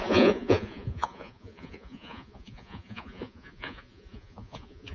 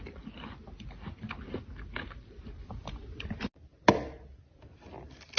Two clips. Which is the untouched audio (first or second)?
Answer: second